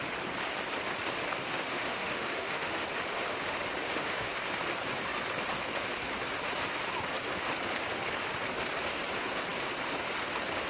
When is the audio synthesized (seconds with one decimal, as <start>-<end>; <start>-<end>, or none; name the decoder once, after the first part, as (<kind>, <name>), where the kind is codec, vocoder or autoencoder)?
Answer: 1.4-2.8 (autoencoder, DAC-VAE); 3.8-4.3